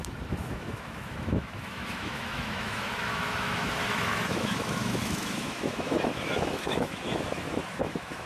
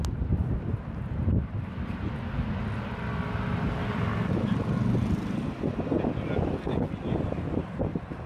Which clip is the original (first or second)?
second